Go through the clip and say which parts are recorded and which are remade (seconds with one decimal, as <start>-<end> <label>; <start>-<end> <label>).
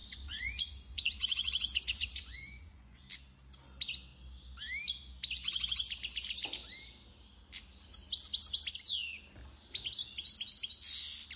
0.0-3.0 remade; 3.0-11.4 recorded